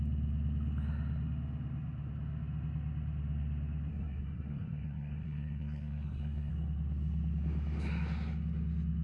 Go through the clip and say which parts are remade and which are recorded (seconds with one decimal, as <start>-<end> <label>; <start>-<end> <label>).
0.0-3.9 recorded; 3.9-6.5 remade; 6.5-9.0 recorded